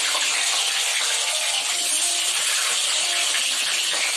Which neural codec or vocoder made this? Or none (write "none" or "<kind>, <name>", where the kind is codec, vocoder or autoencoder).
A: none